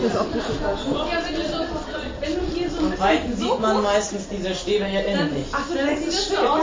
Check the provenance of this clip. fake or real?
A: real